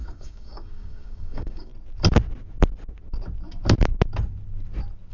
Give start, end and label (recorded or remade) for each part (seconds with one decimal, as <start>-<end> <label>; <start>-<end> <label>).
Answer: 0.0-1.7 remade; 1.7-5.1 recorded